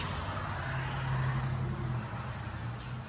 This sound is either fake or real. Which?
real